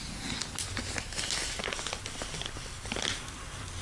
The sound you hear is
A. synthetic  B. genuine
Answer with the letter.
B